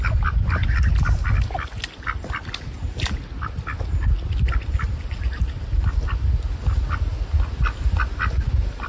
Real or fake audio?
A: real